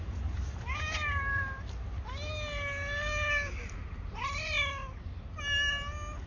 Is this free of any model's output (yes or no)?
yes